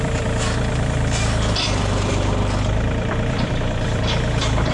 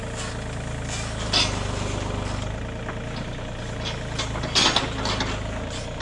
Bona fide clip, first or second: second